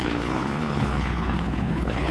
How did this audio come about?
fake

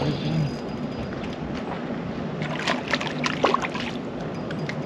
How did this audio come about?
real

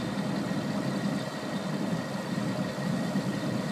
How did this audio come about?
real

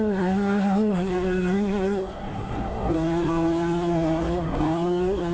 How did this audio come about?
fake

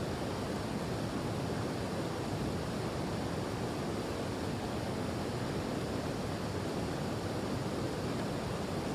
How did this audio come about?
real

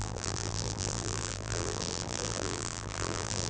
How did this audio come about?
fake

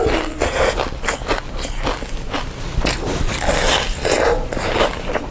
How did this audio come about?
real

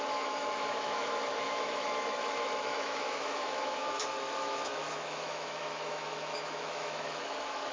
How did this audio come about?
fake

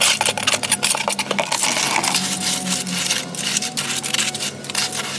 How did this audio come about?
real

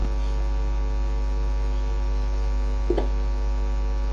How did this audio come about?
real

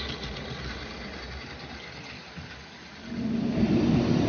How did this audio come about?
real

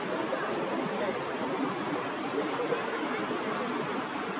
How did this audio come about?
real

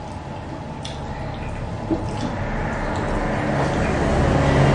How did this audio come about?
real